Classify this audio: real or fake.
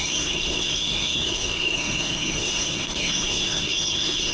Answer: fake